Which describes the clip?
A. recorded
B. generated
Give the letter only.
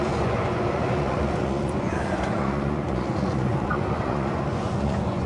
B